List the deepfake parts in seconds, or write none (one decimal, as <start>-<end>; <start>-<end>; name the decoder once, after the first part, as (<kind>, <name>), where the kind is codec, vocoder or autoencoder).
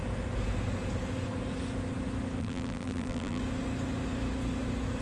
2.4-3.4 (vocoder, BigVGAN v2)